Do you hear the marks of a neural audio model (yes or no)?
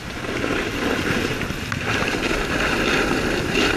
no